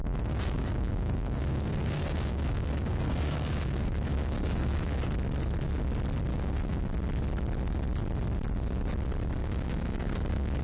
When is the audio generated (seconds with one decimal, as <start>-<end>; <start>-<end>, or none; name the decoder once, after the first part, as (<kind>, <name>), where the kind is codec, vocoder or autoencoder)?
0.0-5.0 (codec, DAC); 6.3-6.8; 9.4-10.6